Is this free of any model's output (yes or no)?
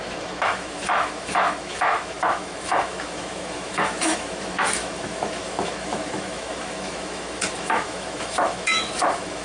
no